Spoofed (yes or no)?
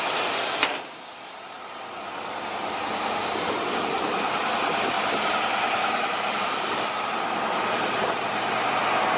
no